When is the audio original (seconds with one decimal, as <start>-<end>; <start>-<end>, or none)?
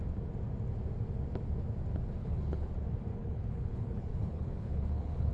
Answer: 0.0-2.2; 2.7-3.1